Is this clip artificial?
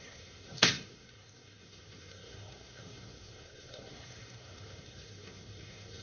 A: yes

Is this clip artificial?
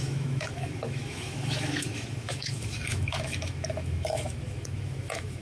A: yes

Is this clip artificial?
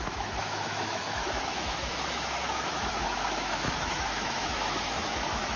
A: yes